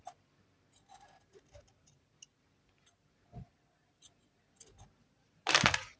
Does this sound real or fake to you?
real